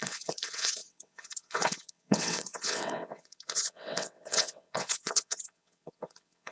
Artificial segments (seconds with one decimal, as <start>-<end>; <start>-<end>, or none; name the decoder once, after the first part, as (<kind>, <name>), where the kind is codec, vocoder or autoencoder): 0.0-6.5 (vocoder, WaveNeXt)